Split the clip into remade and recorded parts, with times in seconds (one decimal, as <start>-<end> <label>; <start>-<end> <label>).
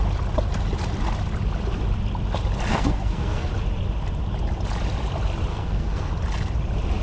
0.0-2.7 recorded; 2.7-3.5 remade; 3.5-5.5 recorded; 5.5-6.1 remade; 6.1-7.0 recorded